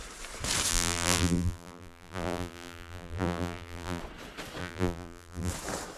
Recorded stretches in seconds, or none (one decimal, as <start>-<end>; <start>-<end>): 0.0-0.7; 4.0-4.6; 5.5-6.0